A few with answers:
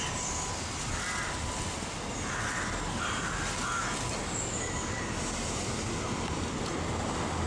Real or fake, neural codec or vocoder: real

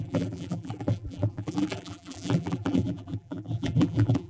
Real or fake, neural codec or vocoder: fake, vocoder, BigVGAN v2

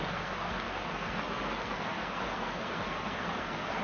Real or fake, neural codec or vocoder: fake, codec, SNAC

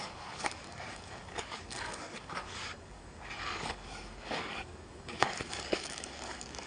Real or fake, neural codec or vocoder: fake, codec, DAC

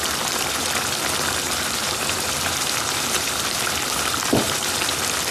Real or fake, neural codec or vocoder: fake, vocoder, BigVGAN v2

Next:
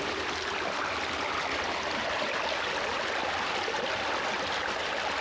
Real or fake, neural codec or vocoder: real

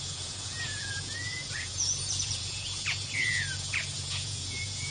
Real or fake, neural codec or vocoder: fake, vocoder, Vocos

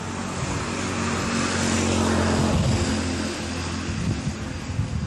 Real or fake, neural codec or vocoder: real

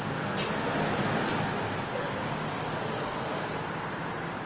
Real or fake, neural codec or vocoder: real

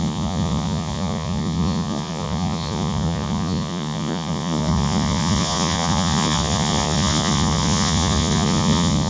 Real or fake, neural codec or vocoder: fake, vocoder, Vocos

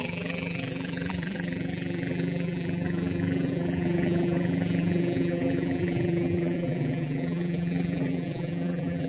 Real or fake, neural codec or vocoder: fake, vocoder, BigVGAN v2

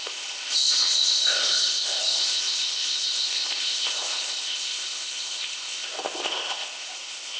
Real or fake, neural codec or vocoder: fake, codec, ZipCodec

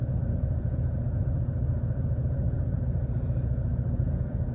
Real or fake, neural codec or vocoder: fake, vocoder, Vocos